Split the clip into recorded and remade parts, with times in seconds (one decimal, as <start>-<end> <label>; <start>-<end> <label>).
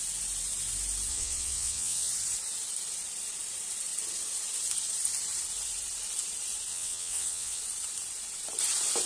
0.0-1.1 recorded; 1.1-2.1 remade; 2.1-6.7 recorded; 6.7-7.6 remade; 7.6-9.1 recorded